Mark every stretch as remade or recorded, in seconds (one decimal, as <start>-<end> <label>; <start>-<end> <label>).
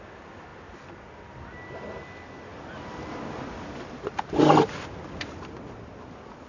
0.0-6.5 recorded